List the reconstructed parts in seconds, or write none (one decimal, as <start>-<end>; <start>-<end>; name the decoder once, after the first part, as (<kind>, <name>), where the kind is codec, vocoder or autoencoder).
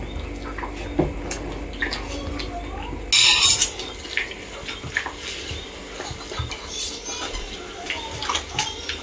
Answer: none